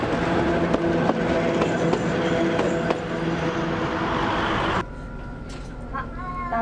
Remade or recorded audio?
recorded